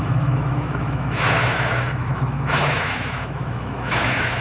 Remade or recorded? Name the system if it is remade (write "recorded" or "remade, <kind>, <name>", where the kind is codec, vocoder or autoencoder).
remade, autoencoder, DAC-VAE